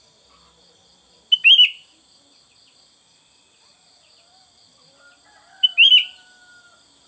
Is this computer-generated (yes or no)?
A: no